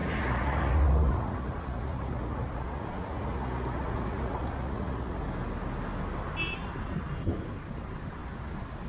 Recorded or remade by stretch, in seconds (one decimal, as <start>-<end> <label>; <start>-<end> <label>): 0.0-5.2 remade; 5.2-8.9 recorded

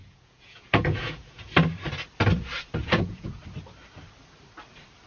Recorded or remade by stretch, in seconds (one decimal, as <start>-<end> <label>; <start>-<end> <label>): 0.0-1.5 remade; 1.5-2.8 recorded; 2.8-3.4 remade; 3.4-5.1 recorded

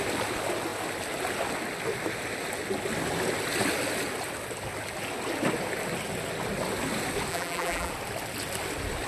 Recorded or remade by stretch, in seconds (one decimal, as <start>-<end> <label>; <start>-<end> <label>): 0.0-7.3 recorded; 7.3-7.9 remade; 7.9-9.1 recorded

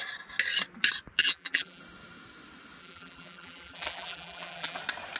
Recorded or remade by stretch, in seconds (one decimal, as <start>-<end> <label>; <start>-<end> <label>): 0.0-1.2 recorded; 1.2-1.8 remade; 1.8-2.8 recorded; 2.8-4.8 remade; 4.8-5.2 recorded